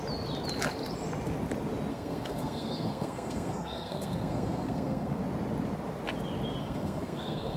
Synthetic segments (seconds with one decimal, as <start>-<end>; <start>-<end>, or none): 1.9-5.2; 6.6-7.6